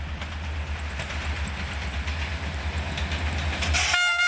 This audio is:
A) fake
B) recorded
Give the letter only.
B